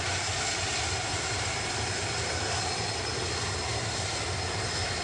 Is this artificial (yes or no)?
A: no